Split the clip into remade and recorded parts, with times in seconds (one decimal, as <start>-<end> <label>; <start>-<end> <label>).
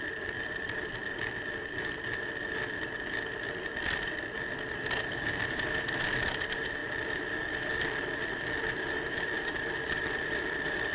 0.0-10.9 recorded